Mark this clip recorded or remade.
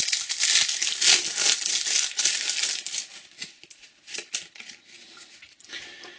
recorded